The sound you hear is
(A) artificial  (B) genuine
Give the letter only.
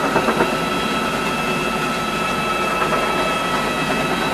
B